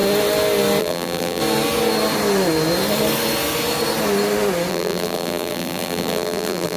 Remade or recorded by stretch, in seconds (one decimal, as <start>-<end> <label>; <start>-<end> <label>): 0.0-0.8 recorded; 0.8-1.4 remade; 1.4-4.7 recorded; 4.7-6.8 remade